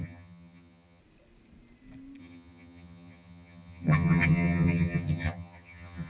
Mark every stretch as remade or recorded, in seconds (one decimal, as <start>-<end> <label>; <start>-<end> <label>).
0.0-1.0 remade; 1.0-2.2 recorded; 2.2-6.1 remade

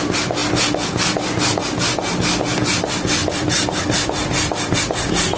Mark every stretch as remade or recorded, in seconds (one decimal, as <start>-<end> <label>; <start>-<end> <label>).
0.0-5.4 recorded

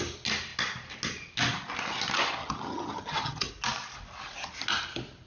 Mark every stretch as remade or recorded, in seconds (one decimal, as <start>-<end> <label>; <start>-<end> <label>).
0.0-2.4 recorded; 2.4-3.5 remade; 3.5-5.3 recorded

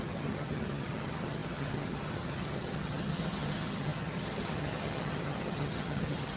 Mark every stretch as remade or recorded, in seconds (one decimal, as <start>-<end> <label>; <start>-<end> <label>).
0.0-6.4 remade

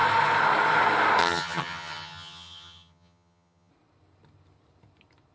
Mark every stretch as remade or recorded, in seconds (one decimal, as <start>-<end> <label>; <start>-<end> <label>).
0.0-1.2 recorded; 1.2-3.7 remade; 3.7-5.3 recorded

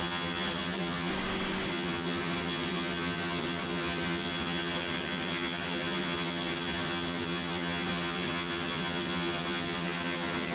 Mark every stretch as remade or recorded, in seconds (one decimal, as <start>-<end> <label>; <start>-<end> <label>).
0.0-1.1 remade; 1.1-1.7 recorded; 1.7-10.5 remade

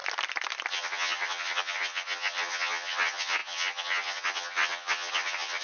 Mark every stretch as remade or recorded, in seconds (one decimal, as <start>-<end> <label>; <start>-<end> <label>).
0.0-0.7 recorded; 0.7-5.6 remade